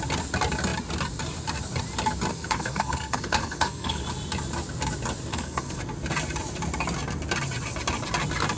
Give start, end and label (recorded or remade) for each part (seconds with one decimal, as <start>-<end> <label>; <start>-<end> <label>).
0.0-2.3 recorded; 2.3-4.0 remade; 4.0-5.3 recorded; 5.3-5.8 remade; 5.8-8.6 recorded